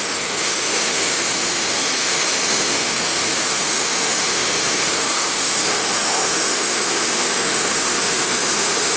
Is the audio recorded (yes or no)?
no